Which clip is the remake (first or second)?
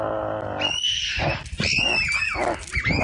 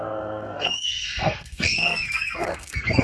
second